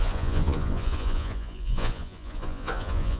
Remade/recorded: remade